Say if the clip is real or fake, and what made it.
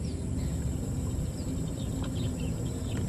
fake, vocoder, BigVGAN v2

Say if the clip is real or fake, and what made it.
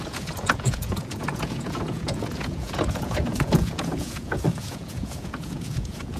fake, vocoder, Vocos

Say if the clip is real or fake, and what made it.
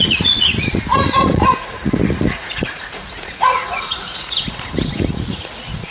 fake, vocoder, Vocos